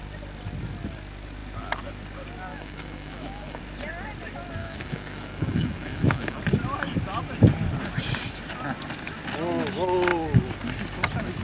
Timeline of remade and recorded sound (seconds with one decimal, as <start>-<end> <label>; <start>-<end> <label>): 0.0-2.5 recorded; 2.5-3.6 remade; 3.6-4.6 recorded; 4.6-6.4 remade; 6.4-11.4 recorded